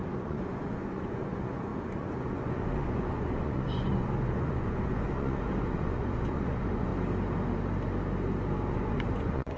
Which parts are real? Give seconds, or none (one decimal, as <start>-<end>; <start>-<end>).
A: 6.9-8.7